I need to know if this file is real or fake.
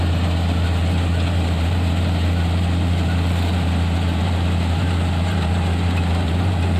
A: fake